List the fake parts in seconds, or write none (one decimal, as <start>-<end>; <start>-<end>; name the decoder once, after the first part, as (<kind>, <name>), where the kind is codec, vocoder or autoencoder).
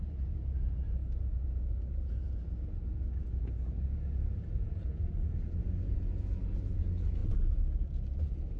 0.0-7.2 (vocoder, Vocos); 8.2-8.6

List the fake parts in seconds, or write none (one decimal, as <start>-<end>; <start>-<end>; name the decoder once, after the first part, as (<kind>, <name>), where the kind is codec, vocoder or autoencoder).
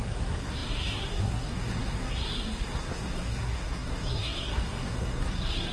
0.0-5.7 (codec, SNAC)